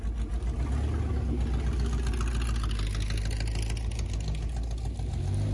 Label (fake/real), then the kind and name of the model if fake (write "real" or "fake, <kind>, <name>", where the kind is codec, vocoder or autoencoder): real